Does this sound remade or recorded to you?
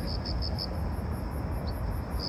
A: recorded